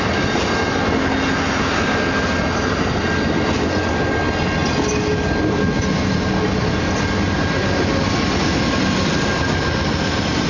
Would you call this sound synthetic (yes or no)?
no